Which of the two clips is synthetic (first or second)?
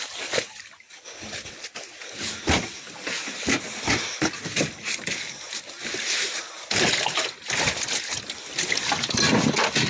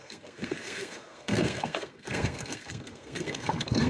second